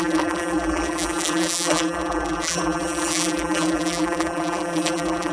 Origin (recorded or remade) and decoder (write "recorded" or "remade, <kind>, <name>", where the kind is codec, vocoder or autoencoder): remade, vocoder, BigVGAN v2